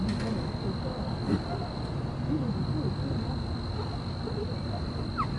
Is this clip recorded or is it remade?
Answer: recorded